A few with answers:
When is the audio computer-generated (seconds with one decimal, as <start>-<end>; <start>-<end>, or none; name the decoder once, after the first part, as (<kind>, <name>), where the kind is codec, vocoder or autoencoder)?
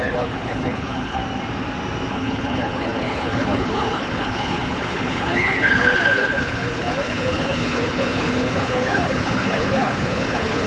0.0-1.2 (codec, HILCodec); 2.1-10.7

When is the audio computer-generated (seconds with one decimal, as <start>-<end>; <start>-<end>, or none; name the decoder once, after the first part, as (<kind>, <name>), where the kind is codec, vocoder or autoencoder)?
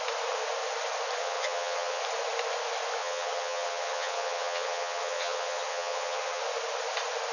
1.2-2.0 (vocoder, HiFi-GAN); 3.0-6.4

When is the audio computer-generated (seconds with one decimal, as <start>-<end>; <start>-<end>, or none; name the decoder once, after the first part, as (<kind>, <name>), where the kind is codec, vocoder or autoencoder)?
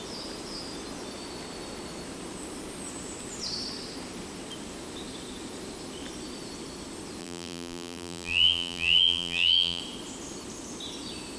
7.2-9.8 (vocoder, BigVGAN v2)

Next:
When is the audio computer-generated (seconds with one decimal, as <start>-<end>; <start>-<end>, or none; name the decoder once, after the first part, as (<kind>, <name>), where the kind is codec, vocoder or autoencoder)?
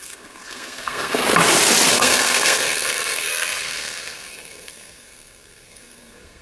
0.0-1.2 (codec, SNAC); 1.9-6.4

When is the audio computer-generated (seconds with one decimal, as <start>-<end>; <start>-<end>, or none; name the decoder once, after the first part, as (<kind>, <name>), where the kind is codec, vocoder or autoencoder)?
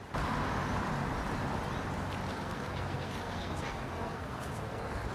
2.3-5.1 (codec, SNAC)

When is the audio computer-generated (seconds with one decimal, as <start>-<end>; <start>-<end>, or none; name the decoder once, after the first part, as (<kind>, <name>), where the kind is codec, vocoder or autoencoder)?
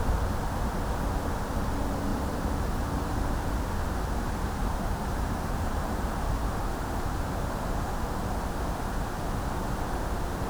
2.1-3.2 (vocoder, BigVGAN v2); 4.6-6.3